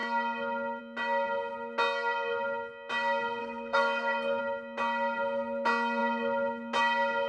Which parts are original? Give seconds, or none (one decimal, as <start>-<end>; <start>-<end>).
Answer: 0.0-3.4; 4.4-7.3